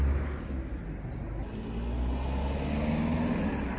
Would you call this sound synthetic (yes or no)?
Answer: no